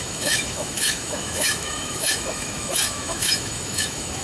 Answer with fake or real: fake